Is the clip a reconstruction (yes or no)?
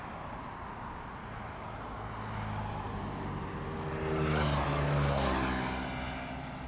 no